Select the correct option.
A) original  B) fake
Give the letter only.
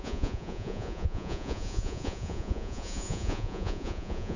B